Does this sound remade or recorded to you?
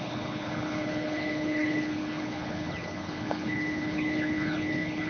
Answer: remade